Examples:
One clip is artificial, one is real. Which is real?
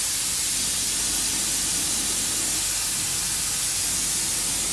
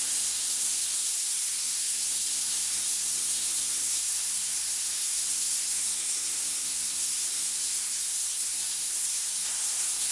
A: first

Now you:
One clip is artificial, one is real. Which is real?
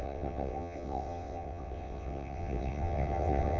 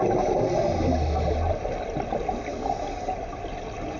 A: second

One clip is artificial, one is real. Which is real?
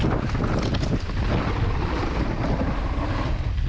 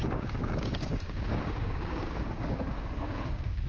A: first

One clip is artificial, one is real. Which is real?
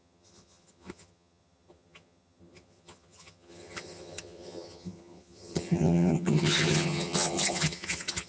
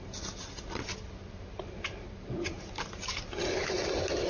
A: second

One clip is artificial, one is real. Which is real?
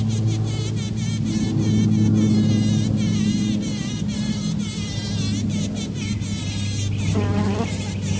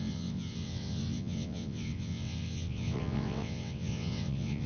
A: first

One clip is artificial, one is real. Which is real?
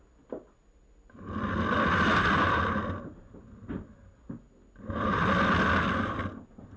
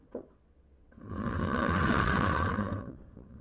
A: first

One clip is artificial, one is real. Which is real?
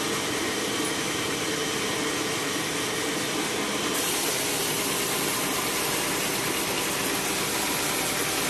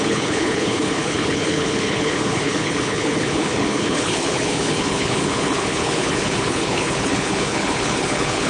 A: first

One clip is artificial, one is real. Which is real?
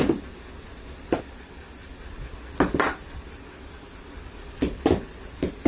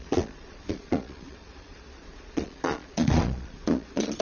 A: first